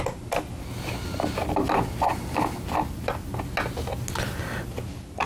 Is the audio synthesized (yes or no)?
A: no